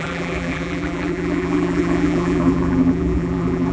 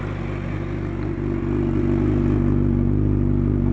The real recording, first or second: second